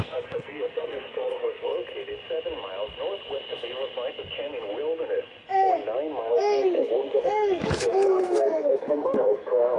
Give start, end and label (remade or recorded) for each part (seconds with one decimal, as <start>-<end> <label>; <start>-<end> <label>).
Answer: 0.0-1.7 remade; 1.7-6.3 recorded; 6.3-9.8 remade